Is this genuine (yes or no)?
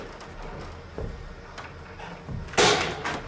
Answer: yes